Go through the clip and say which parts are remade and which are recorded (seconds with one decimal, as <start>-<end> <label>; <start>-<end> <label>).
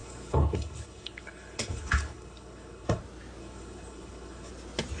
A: 0.0-3.0 remade; 3.0-3.4 recorded; 3.4-4.5 remade; 4.5-5.0 recorded